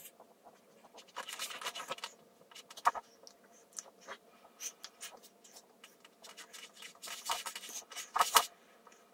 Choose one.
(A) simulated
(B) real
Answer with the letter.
B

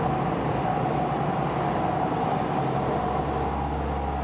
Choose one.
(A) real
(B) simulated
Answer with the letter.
A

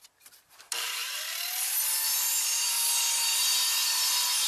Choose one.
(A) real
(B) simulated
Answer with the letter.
A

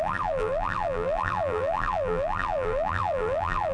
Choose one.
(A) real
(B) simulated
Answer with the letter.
B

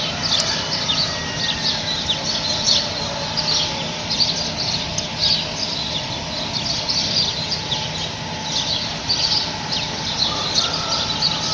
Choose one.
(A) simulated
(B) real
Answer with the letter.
B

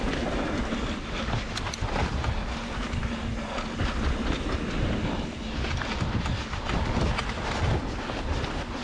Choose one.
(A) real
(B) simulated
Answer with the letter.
A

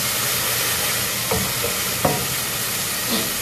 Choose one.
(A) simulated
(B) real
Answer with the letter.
B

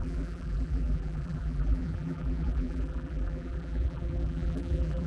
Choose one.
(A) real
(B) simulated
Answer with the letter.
B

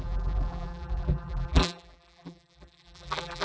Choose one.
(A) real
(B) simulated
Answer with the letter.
B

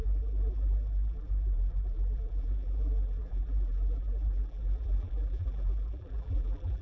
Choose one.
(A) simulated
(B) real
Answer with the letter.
A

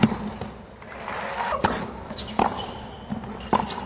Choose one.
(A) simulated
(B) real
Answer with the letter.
B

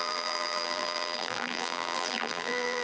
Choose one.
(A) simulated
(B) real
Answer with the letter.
A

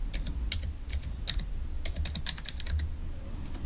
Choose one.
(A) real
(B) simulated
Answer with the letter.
A